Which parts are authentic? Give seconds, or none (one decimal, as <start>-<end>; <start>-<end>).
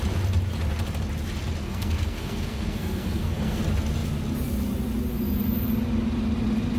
0.0-1.6; 3.6-6.8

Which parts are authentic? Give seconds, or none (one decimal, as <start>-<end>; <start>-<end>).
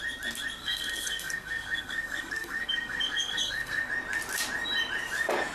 0.0-0.6; 3.9-5.5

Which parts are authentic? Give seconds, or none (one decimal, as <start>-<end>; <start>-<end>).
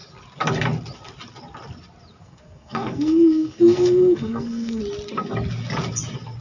0.0-2.2; 4.8-6.4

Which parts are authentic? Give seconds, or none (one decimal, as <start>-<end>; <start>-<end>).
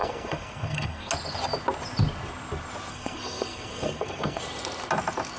1.1-2.9; 4.4-5.4